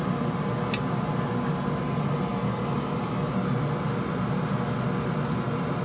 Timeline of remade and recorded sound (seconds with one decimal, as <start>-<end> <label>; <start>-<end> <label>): 0.0-5.8 recorded